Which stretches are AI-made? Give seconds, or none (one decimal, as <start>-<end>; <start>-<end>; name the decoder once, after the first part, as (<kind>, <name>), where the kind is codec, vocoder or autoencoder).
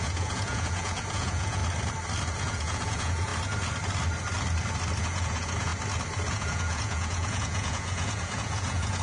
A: 0.0-1.6 (vocoder, Vocos); 2.4-3.3; 5.0-5.7; 6.3-9.0